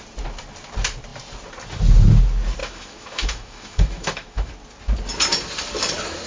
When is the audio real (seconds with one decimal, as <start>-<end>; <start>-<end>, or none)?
0.0-2.6; 4.5-6.3